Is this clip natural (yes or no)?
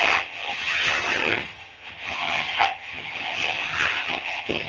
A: no